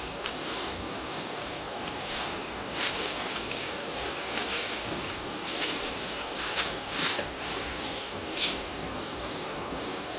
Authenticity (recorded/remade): remade